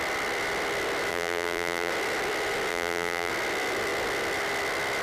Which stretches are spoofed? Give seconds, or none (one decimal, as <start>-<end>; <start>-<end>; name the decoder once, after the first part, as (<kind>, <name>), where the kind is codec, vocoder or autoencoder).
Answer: 1.1-1.9 (vocoder, BigVGAN v2); 2.7-3.3